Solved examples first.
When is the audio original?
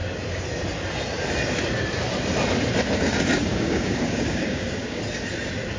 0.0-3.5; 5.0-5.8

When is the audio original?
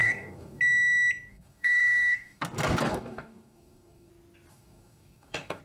0.6-1.3; 2.4-2.9; 4.1-4.5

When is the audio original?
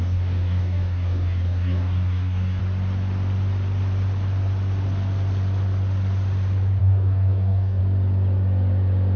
2.6-6.8; 7.8-9.2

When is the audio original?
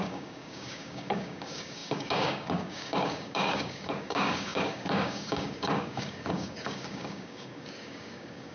none